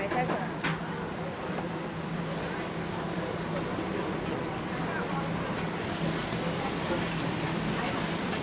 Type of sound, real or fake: real